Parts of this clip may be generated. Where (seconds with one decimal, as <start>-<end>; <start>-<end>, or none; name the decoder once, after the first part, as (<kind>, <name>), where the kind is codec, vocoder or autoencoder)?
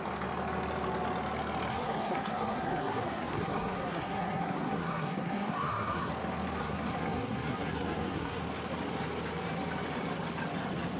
1.7-6.1 (codec, SNAC); 6.6-8.4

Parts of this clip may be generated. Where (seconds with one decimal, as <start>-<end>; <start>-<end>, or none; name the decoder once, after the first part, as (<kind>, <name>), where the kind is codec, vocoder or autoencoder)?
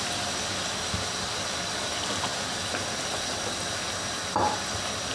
none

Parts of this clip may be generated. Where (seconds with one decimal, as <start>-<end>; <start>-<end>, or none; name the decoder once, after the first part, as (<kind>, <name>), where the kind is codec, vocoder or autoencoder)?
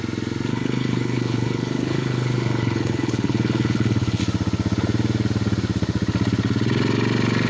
0.5-4.2 (codec, HILCodec)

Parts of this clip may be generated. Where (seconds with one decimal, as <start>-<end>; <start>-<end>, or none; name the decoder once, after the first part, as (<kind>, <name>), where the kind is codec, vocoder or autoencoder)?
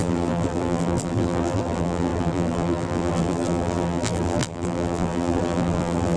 0.0-6.2 (vocoder, BigVGAN v2)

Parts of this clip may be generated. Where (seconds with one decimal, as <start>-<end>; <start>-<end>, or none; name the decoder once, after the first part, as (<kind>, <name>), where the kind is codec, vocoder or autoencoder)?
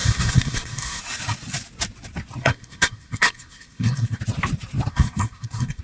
0.0-1.0 (codec, SNAC); 2.4-4.2; 4.9-5.8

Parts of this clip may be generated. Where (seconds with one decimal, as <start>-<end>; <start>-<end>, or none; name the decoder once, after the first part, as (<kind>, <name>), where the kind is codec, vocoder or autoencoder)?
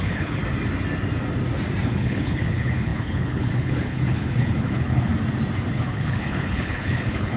0.0-0.4 (codec, HILCodec); 1.9-5.1; 5.7-7.4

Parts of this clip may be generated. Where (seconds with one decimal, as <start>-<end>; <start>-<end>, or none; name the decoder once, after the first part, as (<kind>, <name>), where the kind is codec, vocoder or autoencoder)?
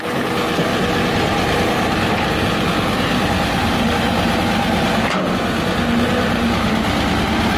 none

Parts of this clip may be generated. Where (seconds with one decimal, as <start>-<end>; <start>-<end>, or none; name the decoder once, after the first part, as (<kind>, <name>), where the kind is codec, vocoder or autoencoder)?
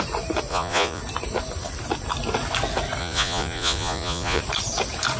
0.5-1.0 (vocoder, Vocos); 3.0-4.4